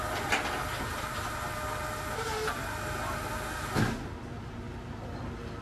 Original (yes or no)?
yes